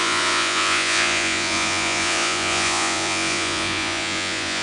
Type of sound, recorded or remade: remade